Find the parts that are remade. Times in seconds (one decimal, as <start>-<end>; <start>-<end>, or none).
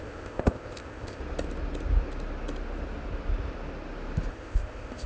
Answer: 0.0-1.2; 4.3-5.1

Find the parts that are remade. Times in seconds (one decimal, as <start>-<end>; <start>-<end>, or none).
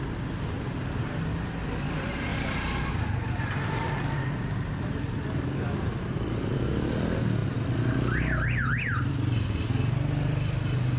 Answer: none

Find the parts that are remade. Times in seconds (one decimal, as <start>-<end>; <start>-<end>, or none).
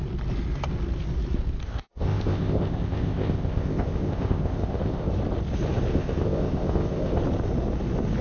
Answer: 1.6-5.1; 5.9-7.2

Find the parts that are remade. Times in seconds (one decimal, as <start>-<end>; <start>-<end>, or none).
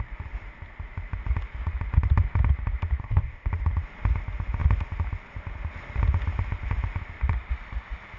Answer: 3.0-3.5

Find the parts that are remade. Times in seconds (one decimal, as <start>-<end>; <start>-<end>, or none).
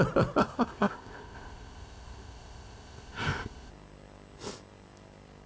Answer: 0.4-3.7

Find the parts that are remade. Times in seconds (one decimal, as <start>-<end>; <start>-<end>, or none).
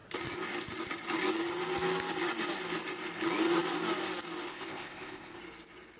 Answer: 4.5-5.4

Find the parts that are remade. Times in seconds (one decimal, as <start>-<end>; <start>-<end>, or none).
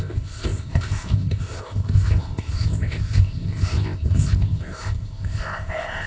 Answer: 0.0-6.1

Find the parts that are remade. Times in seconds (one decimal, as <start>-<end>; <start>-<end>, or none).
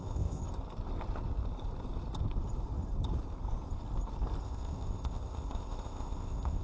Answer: 0.0-0.4; 4.4-6.6